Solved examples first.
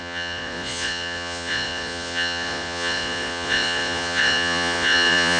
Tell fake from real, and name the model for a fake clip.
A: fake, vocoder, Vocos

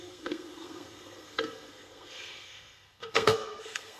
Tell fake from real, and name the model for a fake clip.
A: fake, codec, SNAC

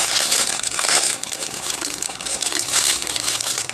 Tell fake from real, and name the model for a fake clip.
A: fake, codec, SNAC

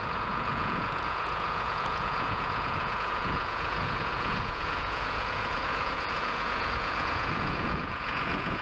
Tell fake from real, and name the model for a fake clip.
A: fake, vocoder, Vocos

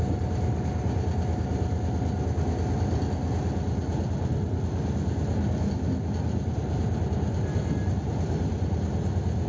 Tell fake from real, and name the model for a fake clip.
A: real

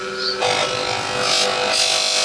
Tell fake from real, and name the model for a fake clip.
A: real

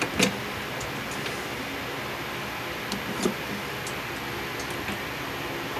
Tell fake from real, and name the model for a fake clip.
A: real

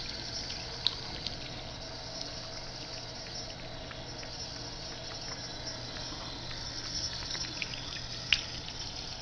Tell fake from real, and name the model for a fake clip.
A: real